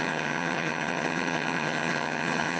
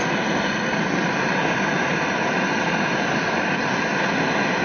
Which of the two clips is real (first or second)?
second